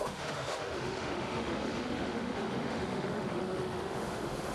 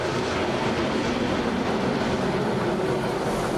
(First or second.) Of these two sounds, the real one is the second